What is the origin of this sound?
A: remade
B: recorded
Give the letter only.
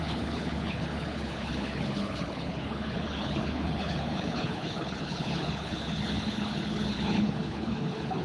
A